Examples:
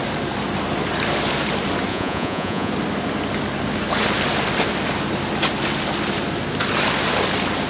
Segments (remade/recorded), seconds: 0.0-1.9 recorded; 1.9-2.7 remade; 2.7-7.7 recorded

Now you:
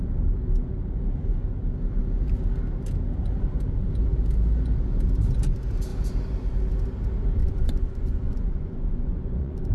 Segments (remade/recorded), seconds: 0.0-7.4 recorded; 7.4-9.7 remade